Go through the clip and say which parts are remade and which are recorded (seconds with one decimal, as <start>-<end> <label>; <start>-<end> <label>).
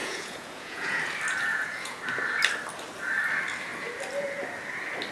0.0-1.0 remade; 1.0-1.5 recorded; 1.5-2.0 remade; 2.0-5.1 recorded